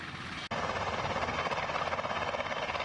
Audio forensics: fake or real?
real